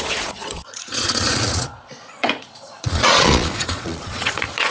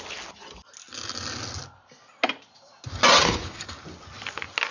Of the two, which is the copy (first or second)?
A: first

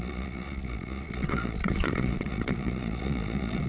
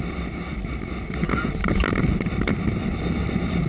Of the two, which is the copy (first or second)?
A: first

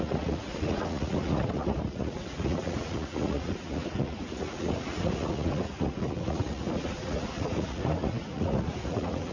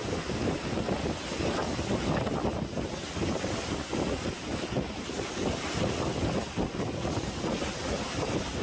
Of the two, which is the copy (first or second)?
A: first